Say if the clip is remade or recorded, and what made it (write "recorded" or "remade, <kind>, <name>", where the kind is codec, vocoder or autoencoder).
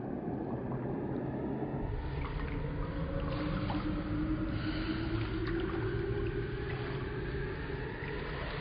recorded